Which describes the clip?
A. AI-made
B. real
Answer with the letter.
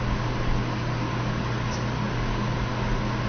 B